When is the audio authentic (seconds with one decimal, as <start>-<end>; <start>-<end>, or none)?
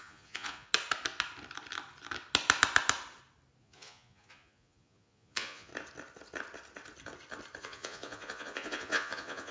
0.7-3.6; 5.7-7.6